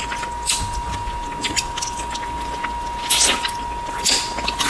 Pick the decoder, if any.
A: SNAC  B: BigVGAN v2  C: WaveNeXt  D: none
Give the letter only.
D